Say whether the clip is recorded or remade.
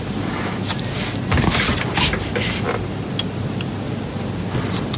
recorded